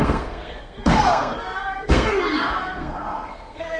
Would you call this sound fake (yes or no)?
yes